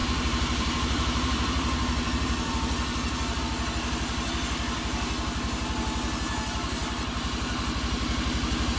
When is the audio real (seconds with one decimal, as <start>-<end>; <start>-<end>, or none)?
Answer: 3.4-8.8